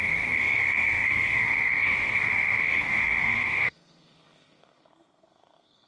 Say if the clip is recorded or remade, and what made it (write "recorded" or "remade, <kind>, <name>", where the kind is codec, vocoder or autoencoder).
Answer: remade, codec, SNAC